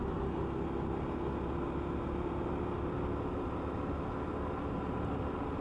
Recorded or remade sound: recorded